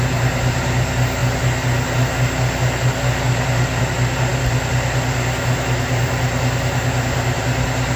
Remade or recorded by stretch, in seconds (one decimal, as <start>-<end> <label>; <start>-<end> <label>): 0.0-8.0 recorded